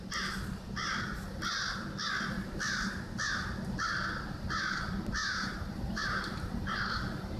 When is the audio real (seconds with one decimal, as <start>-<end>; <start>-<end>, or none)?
0.0-5.2; 6.8-7.4